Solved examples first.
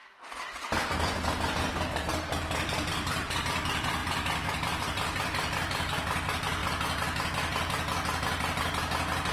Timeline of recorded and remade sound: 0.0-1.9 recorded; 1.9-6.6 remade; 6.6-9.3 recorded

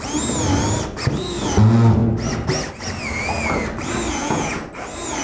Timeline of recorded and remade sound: 0.0-4.2 recorded; 4.2-4.7 remade; 4.7-5.2 recorded

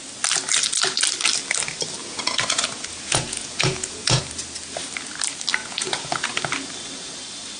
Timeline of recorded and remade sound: 0.0-2.0 recorded; 2.0-4.2 remade; 4.2-5.6 recorded; 5.6-6.4 remade; 6.4-7.6 recorded

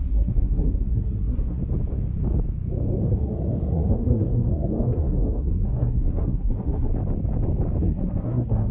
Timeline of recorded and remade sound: 0.0-1.6 remade; 1.6-3.0 recorded; 3.0-6.9 remade; 6.9-7.8 recorded; 7.8-8.7 remade

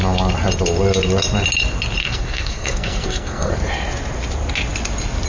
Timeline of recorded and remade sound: 0.0-2.0 recorded; 2.0-3.5 remade; 3.5-5.3 recorded